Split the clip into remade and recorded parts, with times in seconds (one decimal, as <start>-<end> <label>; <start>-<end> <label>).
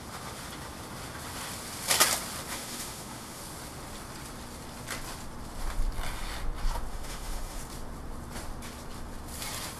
0.0-2.5 recorded; 2.5-3.4 remade; 3.4-6.9 recorded; 6.9-7.6 remade; 7.6-9.8 recorded